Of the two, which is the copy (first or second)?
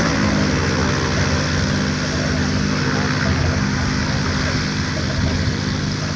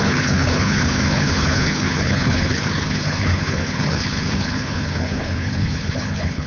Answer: second